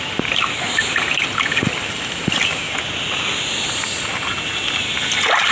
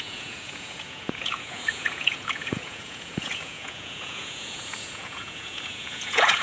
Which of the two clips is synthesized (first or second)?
second